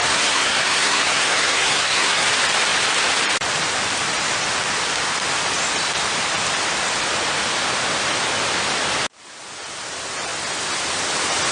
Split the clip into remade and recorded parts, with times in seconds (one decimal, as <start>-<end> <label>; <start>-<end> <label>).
0.0-2.3 remade; 2.3-11.5 recorded